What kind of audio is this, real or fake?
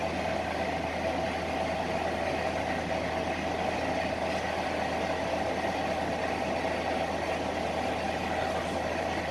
real